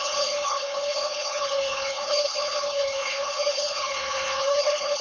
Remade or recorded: remade